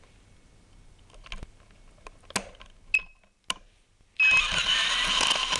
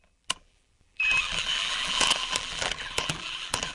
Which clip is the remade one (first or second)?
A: second